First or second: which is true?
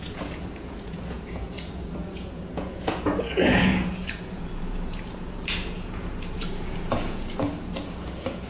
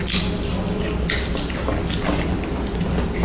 second